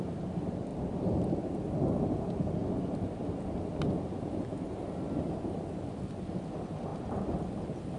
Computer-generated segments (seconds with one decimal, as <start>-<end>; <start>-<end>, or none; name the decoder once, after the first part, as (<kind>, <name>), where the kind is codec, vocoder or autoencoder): none